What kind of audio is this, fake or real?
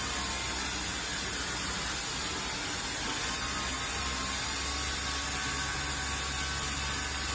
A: real